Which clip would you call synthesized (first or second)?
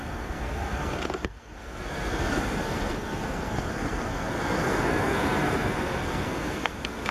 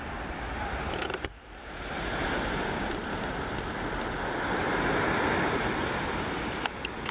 first